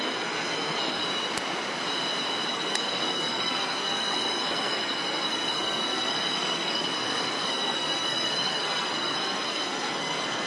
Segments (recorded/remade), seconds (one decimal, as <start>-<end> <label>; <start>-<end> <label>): 0.0-1.0 remade; 1.0-2.5 recorded; 2.5-10.5 remade